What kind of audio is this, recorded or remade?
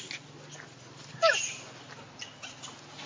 recorded